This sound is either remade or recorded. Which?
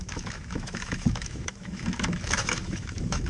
remade